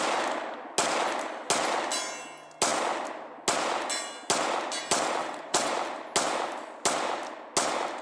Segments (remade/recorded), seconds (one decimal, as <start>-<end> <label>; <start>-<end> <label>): 0.0-5.2 recorded; 5.2-5.7 remade; 5.7-8.0 recorded